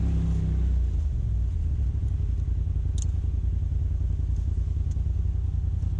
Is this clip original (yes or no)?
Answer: yes